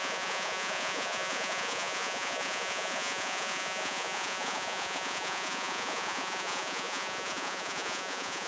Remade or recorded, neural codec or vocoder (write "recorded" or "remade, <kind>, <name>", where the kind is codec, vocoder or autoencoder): remade, vocoder, Vocos